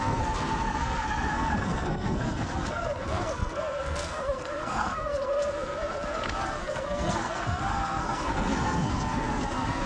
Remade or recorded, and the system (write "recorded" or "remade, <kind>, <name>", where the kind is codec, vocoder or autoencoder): remade, codec, SNAC